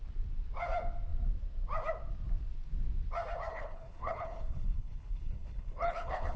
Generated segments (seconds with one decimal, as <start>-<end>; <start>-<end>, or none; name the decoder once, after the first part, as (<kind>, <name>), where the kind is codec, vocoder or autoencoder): 3.5-6.4 (codec, HILCodec)